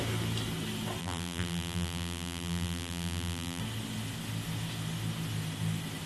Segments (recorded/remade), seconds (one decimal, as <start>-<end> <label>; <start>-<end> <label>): 0.0-1.0 recorded; 1.0-3.6 remade; 3.6-6.1 recorded